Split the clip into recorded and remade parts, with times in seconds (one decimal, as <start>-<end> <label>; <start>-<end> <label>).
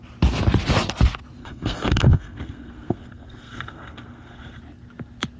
0.0-1.4 recorded; 1.4-4.6 remade; 4.6-5.4 recorded